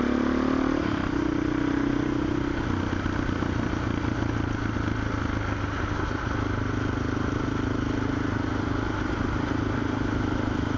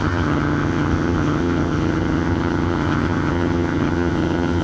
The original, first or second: first